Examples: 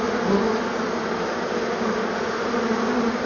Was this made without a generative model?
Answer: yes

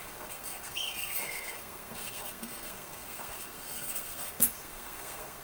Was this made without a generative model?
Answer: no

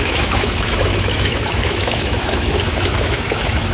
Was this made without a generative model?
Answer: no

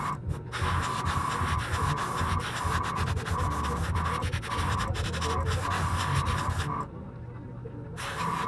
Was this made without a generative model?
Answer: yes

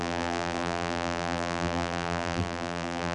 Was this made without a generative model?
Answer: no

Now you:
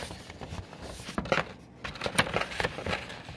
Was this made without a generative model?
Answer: yes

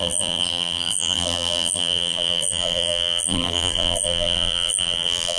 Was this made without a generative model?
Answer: no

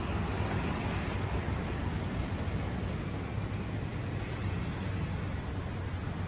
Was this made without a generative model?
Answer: yes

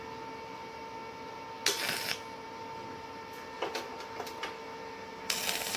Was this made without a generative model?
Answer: yes